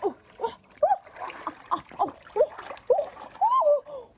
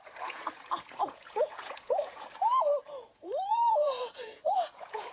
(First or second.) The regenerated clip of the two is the second